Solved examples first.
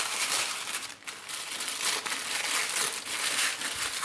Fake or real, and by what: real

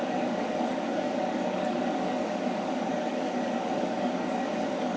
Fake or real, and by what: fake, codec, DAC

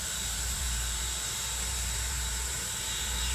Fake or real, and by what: fake, vocoder, BigVGAN v2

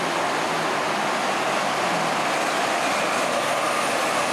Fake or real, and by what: real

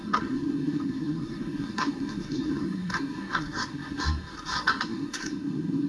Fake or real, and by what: fake, codec, SNAC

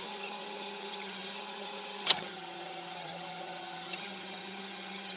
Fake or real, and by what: fake, vocoder, HiFi-GAN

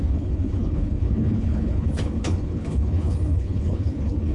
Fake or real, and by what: fake, codec, HILCodec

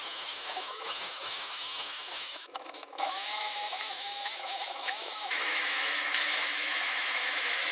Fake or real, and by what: fake, autoencoder, DAC-VAE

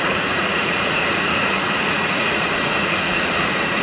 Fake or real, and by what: fake, vocoder, Vocos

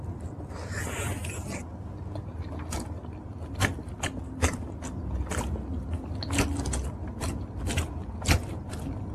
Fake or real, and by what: real